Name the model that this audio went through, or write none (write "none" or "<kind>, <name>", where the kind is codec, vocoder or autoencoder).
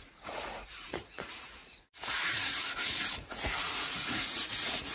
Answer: vocoder, Vocos